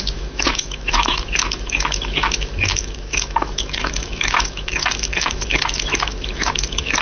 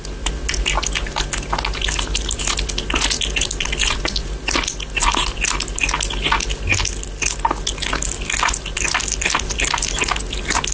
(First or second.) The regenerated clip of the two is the first